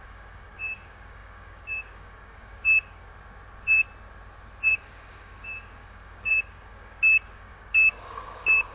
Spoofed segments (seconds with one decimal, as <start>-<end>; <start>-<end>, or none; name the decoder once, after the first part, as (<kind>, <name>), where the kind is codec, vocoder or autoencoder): 0.0-3.1 (codec, DAC); 4.7-8.7